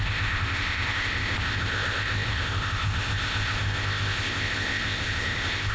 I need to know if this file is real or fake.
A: fake